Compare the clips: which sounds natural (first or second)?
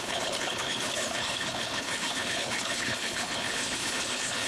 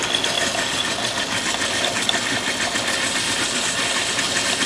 second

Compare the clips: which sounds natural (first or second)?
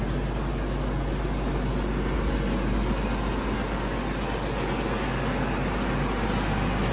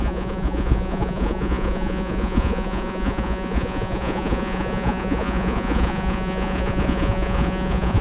first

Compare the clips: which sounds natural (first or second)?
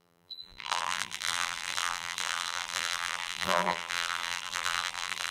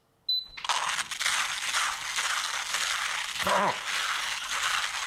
second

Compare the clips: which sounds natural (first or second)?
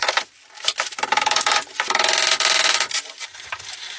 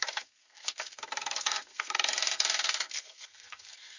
first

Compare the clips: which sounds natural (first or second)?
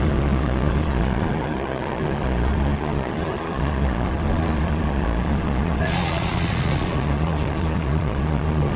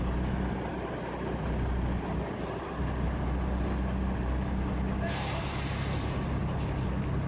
second